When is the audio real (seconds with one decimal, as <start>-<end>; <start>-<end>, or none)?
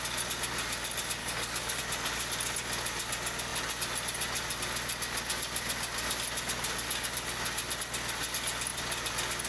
0.0-1.2; 1.8-9.5